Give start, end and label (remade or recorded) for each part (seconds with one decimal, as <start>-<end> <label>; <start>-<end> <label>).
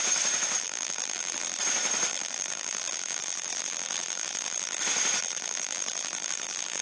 0.0-0.6 recorded; 0.6-1.6 remade; 1.6-2.1 recorded; 2.1-4.8 remade; 4.8-5.2 recorded; 5.2-6.8 remade